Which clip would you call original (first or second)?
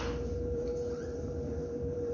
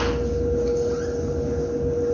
second